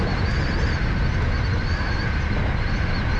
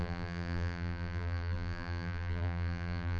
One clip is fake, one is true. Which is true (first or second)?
first